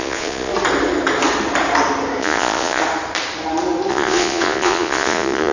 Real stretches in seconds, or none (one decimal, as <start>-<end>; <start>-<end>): 0.5-2.2; 2.8-3.9